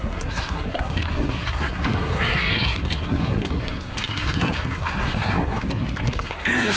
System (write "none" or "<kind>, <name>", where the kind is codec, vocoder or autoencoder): codec, SNAC